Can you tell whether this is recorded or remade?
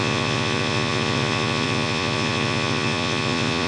remade